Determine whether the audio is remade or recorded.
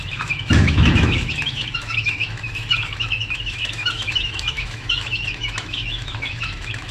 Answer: remade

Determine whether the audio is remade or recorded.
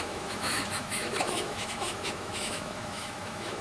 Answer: remade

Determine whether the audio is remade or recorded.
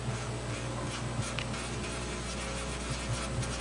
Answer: recorded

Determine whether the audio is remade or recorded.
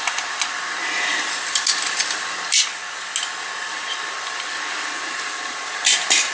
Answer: recorded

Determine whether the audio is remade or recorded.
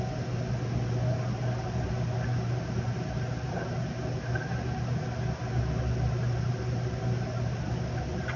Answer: recorded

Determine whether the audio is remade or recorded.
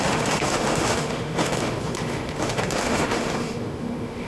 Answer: remade